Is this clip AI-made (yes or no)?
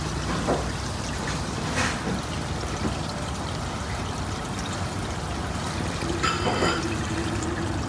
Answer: no